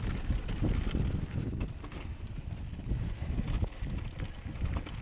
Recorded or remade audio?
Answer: recorded